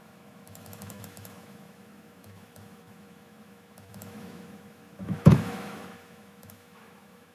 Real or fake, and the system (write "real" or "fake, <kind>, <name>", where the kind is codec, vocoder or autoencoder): fake, autoencoder, DAC-VAE